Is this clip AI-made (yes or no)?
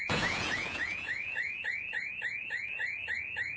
yes